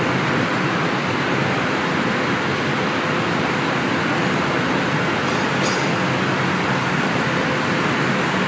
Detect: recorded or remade recorded